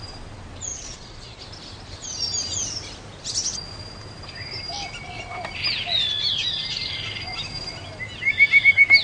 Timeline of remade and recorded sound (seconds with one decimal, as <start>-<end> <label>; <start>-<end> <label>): 0.0-0.7 recorded; 0.7-1.4 remade; 1.4-9.0 recorded